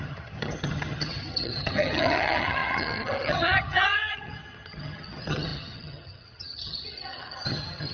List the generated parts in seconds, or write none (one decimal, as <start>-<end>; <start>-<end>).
0.0-7.9